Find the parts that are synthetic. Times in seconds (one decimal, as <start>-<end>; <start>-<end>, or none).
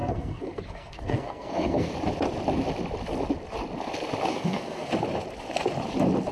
0.0-1.9; 4.3-4.9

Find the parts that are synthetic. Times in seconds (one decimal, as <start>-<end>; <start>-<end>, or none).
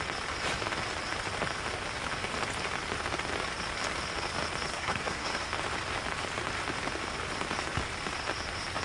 4.7-5.5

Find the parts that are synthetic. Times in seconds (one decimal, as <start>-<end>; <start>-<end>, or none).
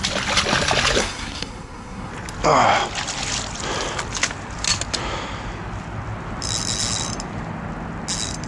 1.0-2.1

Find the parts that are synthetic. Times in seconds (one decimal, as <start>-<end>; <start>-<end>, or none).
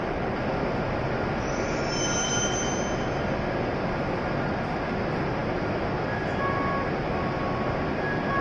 none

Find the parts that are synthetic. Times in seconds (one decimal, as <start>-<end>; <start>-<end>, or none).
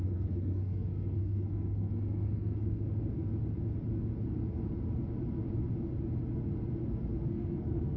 0.0-3.3; 7.2-8.0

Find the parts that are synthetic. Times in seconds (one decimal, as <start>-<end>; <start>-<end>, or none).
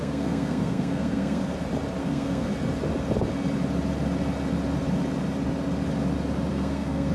0.0-1.4; 2.0-2.5; 6.5-7.1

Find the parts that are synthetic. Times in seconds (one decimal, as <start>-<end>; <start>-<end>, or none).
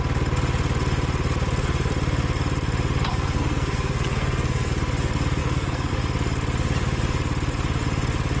3.1-4.7; 5.4-5.9